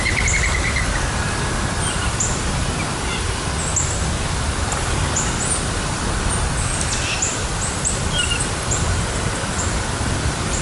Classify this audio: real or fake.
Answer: real